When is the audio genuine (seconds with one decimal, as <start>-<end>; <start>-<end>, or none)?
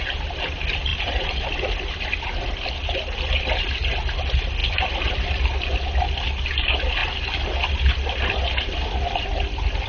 0.0-0.9; 2.6-4.6; 5.1-7.0; 7.7-9.9